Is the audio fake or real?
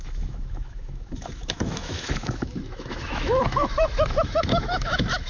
fake